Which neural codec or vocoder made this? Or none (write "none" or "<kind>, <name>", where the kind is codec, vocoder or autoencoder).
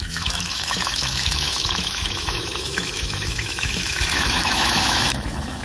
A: autoencoder, DAC-VAE